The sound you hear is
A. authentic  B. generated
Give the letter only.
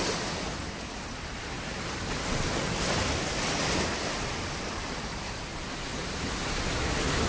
A